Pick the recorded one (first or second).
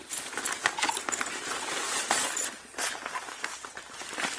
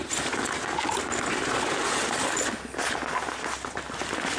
second